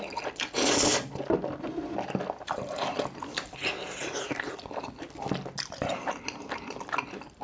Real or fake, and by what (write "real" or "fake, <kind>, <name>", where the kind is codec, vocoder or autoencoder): real